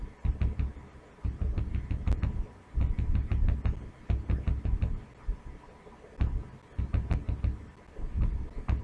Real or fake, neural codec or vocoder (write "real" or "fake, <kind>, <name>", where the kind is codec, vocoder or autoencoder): real